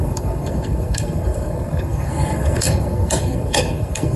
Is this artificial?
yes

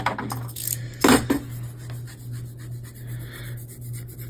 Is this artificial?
no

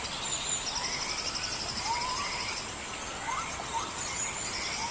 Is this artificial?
no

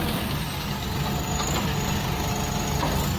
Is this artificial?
no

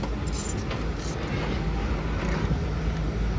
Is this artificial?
no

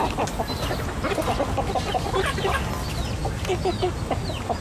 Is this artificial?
no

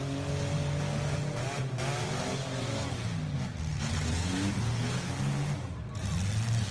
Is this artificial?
no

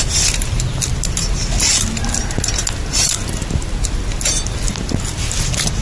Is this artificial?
no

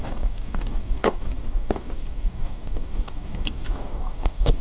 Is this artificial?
yes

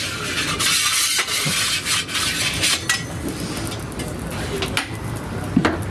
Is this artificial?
no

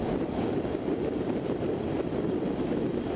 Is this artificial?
no